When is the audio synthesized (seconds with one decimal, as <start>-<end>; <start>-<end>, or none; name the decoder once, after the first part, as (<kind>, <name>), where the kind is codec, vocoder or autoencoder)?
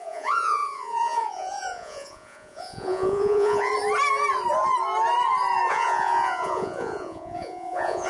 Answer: 0.0-3.7 (vocoder, Vocos); 5.7-8.1